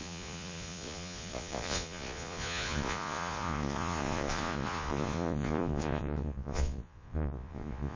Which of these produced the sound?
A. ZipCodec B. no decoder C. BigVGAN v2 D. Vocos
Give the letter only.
D